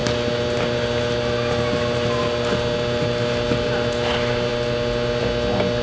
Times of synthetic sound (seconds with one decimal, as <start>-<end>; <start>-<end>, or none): none